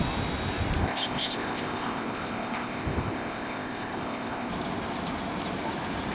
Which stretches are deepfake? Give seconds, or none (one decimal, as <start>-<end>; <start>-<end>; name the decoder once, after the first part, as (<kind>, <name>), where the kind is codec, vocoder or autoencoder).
0.8-4.5 (codec, ZipCodec)